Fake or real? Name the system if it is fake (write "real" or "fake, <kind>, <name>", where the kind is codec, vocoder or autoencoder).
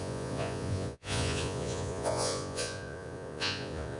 fake, vocoder, Vocos